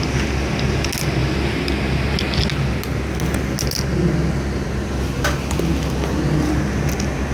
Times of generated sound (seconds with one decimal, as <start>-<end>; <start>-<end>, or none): none